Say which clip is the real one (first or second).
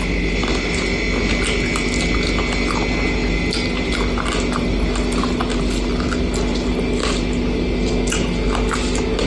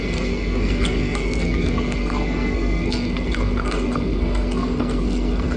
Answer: first